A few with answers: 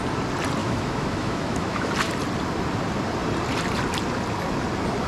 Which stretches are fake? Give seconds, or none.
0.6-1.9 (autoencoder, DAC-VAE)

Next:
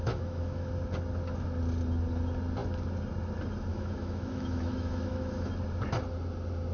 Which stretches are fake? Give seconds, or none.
0.0-0.7 (autoencoder, DAC-VAE); 3.7-5.5

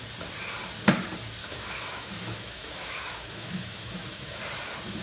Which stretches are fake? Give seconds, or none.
1.4-4.4 (autoencoder, DAC-VAE)

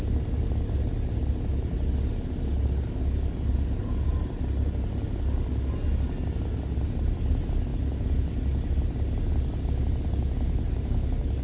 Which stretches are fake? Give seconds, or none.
none

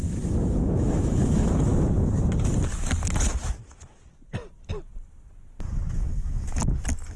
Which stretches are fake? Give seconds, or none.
0.0-1.7 (autoencoder, DAC-VAE); 6.0-6.6

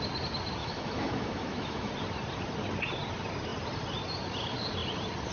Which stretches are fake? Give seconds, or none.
0.6-1.9 (autoencoder, DAC-VAE)

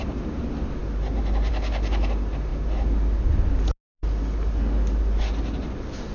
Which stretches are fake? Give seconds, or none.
none